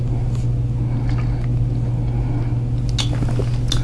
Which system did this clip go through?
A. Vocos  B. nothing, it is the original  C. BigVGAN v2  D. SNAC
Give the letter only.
B